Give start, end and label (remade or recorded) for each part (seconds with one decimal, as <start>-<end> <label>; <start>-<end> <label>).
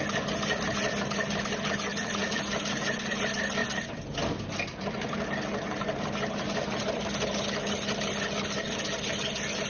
0.0-1.9 recorded; 1.9-2.4 remade; 2.4-9.7 recorded